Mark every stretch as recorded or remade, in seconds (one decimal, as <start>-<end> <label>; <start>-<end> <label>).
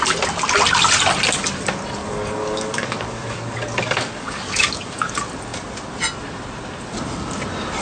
0.0-2.0 recorded; 2.0-5.1 remade; 5.1-7.8 recorded